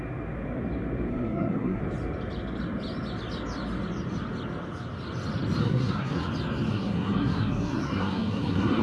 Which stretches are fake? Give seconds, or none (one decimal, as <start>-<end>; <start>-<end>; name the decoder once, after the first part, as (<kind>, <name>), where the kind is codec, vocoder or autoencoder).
1.1-1.8 (codec, SNAC); 5.6-6.3; 6.7-8.8